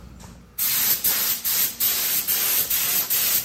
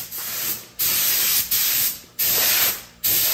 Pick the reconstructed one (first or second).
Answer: second